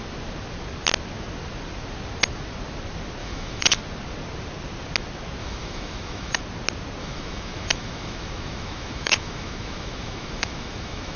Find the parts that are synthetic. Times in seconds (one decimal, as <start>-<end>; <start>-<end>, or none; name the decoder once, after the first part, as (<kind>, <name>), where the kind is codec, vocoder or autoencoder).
3.2-3.8 (autoencoder, DAC-VAE); 5.4-6.4; 7.0-11.2